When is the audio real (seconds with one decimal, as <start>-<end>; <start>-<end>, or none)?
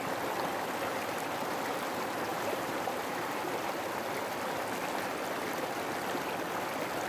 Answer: 0.0-2.3; 3.4-7.1